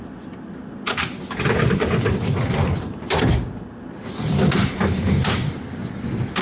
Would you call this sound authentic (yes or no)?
yes